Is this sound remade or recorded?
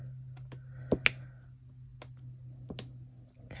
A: recorded